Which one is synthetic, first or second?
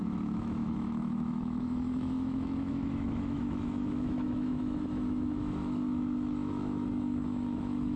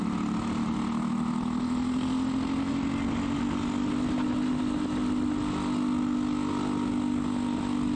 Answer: first